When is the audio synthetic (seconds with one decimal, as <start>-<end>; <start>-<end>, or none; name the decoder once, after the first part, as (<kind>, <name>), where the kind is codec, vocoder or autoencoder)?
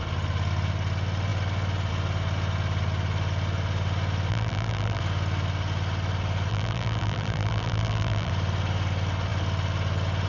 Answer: 4.3-5.0 (vocoder, BigVGAN v2); 6.5-8.3